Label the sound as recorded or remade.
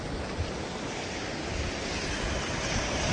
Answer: recorded